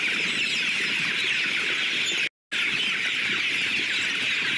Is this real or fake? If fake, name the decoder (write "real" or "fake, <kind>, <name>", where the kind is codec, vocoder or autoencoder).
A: real